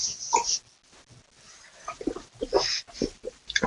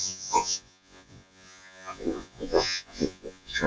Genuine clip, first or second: first